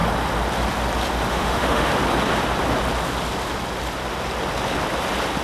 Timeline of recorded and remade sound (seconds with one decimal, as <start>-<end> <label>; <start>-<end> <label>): 0.0-1.3 recorded; 1.3-1.9 remade; 1.9-5.4 recorded